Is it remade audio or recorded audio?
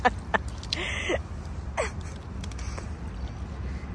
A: recorded